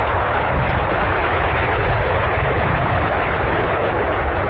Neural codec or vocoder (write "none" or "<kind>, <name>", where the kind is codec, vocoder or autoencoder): codec, HILCodec